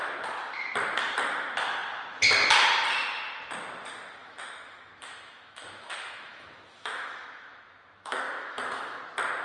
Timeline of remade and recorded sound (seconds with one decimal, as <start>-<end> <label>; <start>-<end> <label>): 0.0-4.2 recorded; 4.2-9.0 remade; 9.0-9.4 recorded